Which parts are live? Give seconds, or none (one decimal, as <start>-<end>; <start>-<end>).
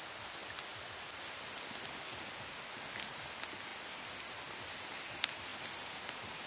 0.0-6.5